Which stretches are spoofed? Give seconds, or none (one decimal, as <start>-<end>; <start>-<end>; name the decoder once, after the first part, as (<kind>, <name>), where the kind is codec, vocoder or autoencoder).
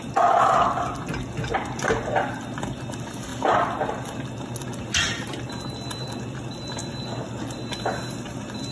none